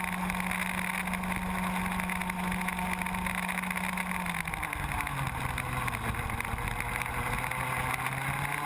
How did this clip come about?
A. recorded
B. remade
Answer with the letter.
A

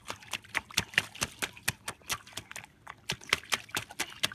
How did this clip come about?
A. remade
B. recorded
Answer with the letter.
B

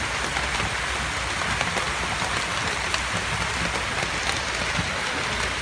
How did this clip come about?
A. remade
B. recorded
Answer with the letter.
B